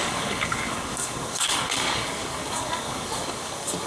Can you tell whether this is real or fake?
fake